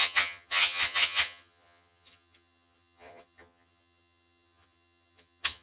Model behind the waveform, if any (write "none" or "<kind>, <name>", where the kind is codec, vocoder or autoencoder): vocoder, HiFi-GAN